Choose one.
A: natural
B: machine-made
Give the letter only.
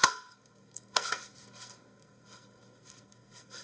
B